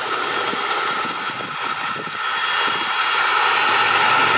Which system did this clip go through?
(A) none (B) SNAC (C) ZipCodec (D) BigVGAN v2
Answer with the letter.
A